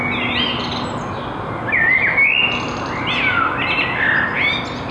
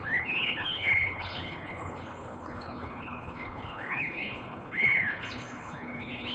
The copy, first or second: second